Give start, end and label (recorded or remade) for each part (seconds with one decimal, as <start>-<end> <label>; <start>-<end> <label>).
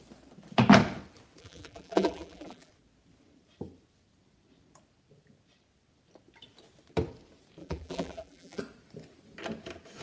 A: 0.0-1.4 recorded; 1.4-2.7 remade; 2.7-7.6 recorded; 7.6-8.6 remade; 8.6-10.0 recorded